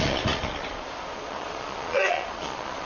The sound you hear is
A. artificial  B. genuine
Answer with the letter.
A